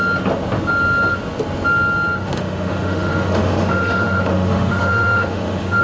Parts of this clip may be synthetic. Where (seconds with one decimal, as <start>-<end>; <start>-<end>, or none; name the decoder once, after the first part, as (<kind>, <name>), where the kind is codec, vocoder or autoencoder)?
2.2-5.8 (autoencoder, DAC-VAE)